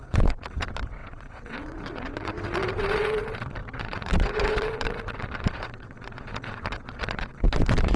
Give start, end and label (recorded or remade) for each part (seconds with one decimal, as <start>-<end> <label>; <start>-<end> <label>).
0.0-8.0 remade